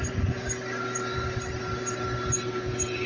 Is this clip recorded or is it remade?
recorded